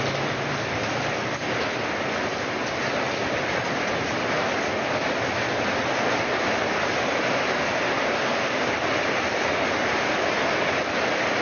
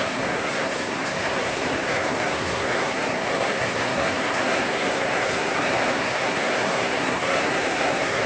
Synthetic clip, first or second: second